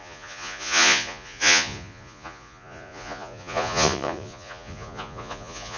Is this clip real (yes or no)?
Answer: no